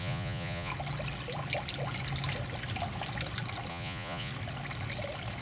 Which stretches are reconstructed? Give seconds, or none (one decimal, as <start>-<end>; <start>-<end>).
0.0-0.7; 3.7-4.3